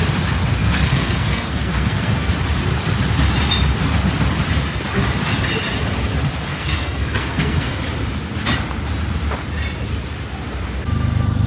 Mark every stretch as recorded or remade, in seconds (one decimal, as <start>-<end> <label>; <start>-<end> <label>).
0.0-0.6 recorded; 0.6-2.3 remade; 2.3-6.5 recorded; 6.5-7.8 remade; 7.8-11.5 recorded